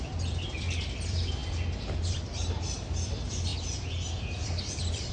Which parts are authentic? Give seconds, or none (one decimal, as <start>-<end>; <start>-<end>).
3.5-4.2